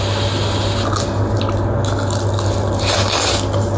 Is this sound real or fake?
real